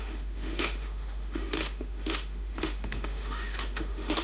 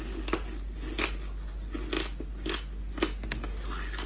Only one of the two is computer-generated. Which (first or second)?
first